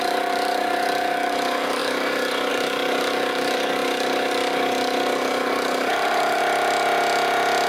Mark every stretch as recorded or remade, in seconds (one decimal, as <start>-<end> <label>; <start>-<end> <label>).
0.0-6.4 remade; 6.4-7.7 recorded